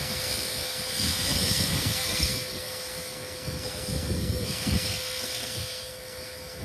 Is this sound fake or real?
fake